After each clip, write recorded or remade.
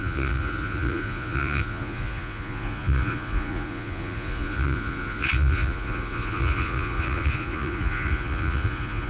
remade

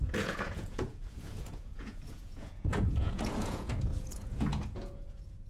remade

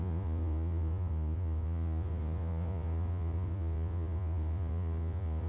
remade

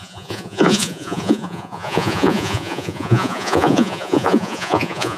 remade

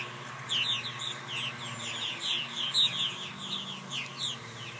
recorded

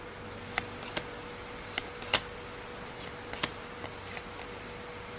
recorded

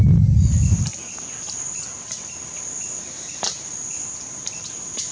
recorded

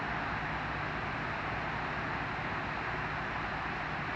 recorded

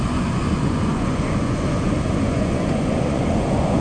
remade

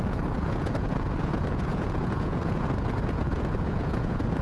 remade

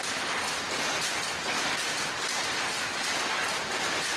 recorded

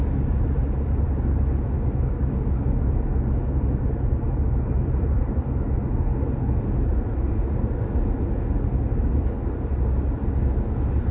recorded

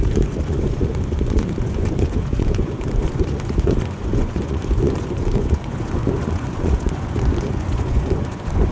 remade